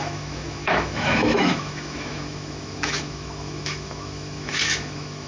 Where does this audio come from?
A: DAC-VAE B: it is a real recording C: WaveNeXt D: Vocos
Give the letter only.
A